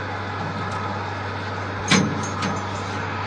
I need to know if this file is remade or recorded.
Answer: recorded